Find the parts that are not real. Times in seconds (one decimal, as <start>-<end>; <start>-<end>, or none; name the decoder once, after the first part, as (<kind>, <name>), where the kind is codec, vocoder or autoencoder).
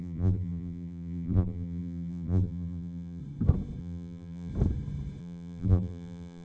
0.0-3.2 (vocoder, BigVGAN v2); 3.8-4.5; 5.2-6.4